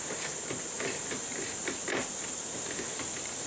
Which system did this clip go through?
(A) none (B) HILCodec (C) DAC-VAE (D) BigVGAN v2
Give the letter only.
A